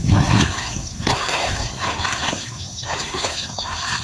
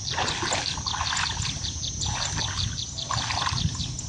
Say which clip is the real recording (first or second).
second